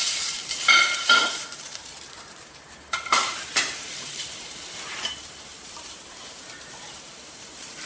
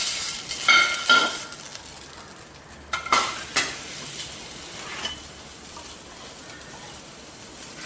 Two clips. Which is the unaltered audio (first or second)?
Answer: second